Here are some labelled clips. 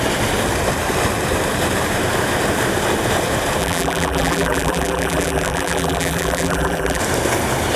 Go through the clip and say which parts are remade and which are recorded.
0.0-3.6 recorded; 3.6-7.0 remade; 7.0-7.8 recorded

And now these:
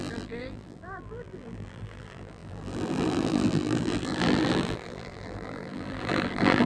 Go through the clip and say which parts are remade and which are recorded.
0.0-6.7 remade

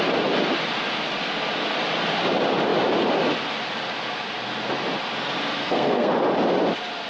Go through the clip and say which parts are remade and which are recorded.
0.0-5.6 recorded; 5.6-6.1 remade; 6.1-7.1 recorded

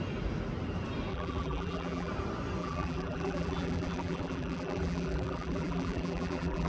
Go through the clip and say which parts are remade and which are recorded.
0.0-1.1 recorded; 1.1-2.1 remade; 2.1-2.6 recorded; 2.6-6.7 remade

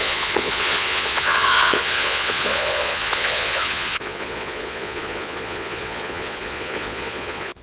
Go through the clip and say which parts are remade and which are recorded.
0.0-7.6 remade

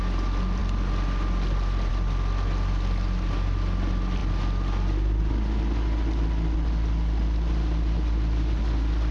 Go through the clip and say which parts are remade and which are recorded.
0.0-9.1 recorded

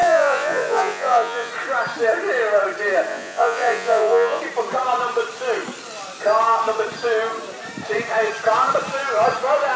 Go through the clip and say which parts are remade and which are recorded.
0.0-1.5 remade; 1.5-3.1 recorded; 3.1-4.4 remade; 4.4-9.8 recorded